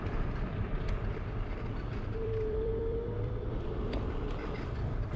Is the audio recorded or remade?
remade